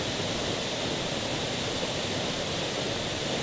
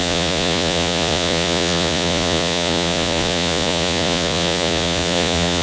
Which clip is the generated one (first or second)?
second